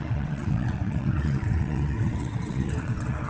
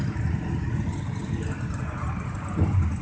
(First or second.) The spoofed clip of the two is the first